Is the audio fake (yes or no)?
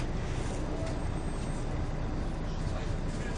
no